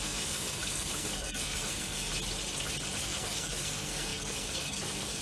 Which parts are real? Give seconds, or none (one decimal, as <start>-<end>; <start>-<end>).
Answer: 2.1-3.0